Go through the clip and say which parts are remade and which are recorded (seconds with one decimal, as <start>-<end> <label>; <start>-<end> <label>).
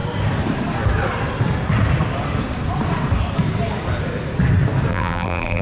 0.0-4.9 recorded; 4.9-5.6 remade